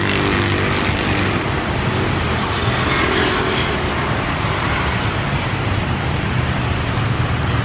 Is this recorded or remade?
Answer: recorded